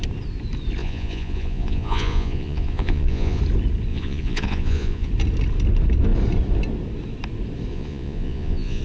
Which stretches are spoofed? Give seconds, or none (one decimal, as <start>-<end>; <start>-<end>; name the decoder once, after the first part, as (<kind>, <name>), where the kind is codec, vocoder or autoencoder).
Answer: 0.8-3.4 (vocoder, Vocos); 3.9-5.1; 7.7-8.8